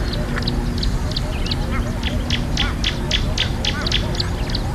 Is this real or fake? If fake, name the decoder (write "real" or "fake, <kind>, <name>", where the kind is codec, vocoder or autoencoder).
real